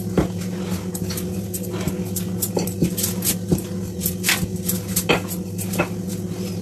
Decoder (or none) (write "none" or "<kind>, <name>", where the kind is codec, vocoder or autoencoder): none